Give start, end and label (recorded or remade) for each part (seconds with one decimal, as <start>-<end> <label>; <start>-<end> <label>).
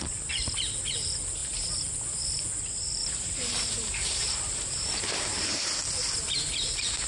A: 0.0-3.0 recorded; 3.0-5.6 remade; 5.6-7.1 recorded